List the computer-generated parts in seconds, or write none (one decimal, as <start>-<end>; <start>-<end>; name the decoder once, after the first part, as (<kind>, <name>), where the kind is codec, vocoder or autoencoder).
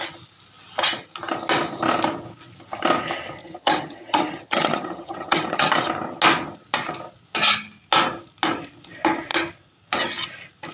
3.4-5.7 (vocoder, HiFi-GAN)